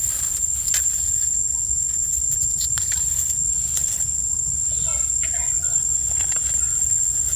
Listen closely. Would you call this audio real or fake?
real